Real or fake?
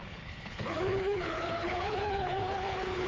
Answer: fake